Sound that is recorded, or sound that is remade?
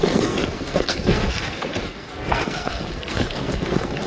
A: remade